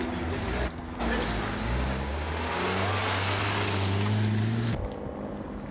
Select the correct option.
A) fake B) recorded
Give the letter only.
B